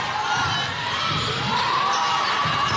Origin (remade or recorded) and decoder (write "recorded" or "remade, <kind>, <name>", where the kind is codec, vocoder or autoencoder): recorded